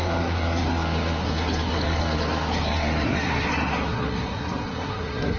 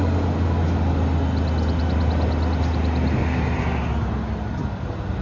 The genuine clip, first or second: second